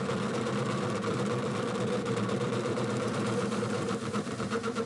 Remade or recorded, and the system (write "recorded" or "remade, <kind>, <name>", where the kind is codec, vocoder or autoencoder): remade, vocoder, BigVGAN v2